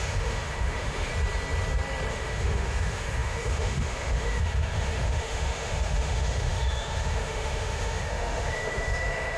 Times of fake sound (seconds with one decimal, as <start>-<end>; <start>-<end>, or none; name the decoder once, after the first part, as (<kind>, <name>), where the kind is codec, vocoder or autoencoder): 0.0-1.1 (autoencoder, DAC-VAE); 2.1-9.4